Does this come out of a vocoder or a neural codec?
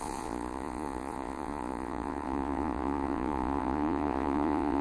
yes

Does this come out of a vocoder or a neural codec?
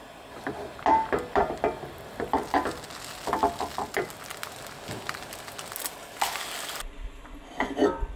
no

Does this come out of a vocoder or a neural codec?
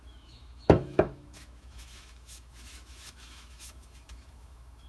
yes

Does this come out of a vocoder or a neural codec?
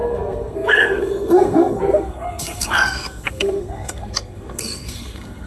yes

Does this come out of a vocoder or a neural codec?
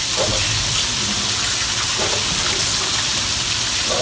no